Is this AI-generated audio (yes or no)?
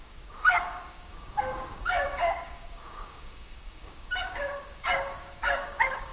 yes